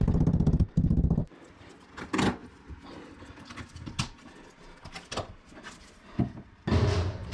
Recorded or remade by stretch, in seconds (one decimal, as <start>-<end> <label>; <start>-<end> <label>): 0.0-7.3 recorded